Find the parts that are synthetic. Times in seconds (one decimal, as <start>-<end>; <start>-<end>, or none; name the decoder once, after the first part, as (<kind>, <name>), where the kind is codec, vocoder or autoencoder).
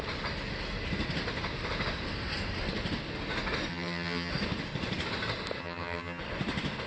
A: 3.7-4.3 (vocoder, HiFi-GAN); 5.6-6.2